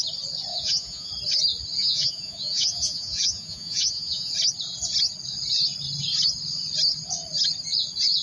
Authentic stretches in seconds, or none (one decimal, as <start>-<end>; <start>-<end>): 0.0-0.5; 1.1-1.8; 4.3-8.2

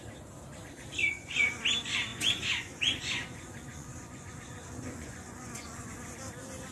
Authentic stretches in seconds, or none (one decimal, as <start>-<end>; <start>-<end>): 0.0-1.0; 1.6-2.1; 6.1-6.7

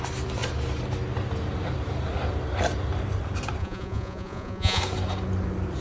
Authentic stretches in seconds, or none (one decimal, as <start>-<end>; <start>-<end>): 0.0-3.6; 4.8-5.8